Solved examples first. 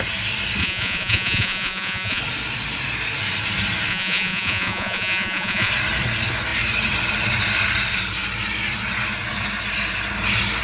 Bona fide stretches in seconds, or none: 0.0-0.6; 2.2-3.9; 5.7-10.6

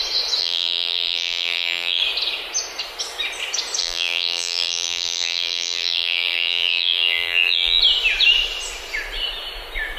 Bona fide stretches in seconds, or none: 0.0-0.4; 2.0-3.8; 7.8-10.0

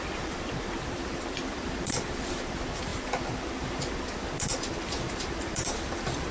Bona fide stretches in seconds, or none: none

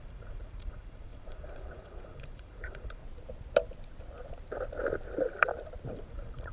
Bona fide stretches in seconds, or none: 3.0-6.1

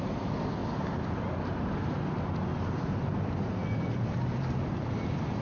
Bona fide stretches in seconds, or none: 0.0-5.4